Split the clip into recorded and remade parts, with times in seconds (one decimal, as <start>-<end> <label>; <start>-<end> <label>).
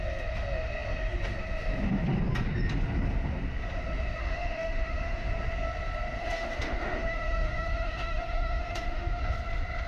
0.0-4.2 recorded; 4.2-5.3 remade; 5.3-6.2 recorded; 6.2-9.2 remade; 9.2-9.9 recorded